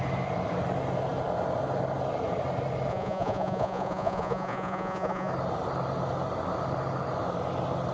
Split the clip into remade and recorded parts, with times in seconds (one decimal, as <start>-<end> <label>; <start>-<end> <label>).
0.0-2.9 recorded; 2.9-5.3 remade; 5.3-7.9 recorded